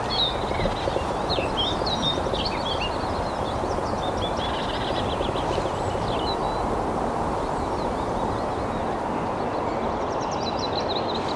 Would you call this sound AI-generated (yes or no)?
no